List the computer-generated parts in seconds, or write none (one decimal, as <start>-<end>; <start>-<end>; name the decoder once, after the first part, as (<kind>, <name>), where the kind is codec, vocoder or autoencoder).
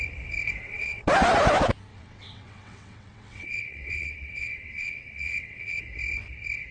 0.6-1.1 (vocoder, WaveNeXt); 1.9-5.8